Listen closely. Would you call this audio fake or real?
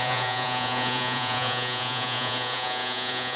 fake